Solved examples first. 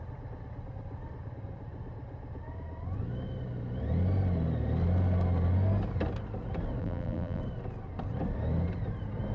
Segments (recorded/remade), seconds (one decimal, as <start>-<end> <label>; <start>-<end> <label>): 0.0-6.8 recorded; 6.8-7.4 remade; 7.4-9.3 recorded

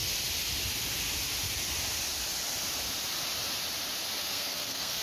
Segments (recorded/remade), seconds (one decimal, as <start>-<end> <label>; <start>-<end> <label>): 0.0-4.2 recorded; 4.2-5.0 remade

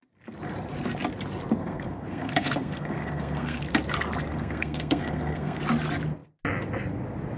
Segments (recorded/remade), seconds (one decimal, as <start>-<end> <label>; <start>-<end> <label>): 0.0-1.6 recorded; 1.6-3.6 remade; 3.6-4.3 recorded; 4.3-5.6 remade; 5.6-7.4 recorded